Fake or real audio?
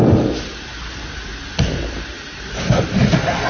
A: real